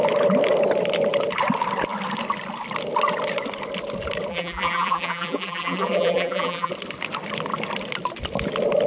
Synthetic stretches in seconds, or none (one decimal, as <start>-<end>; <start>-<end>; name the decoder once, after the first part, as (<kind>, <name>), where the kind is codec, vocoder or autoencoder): 4.3-6.7 (vocoder, BigVGAN v2)